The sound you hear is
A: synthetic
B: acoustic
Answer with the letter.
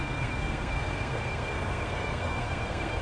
A